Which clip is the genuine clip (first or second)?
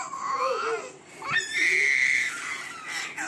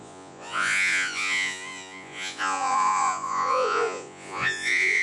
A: first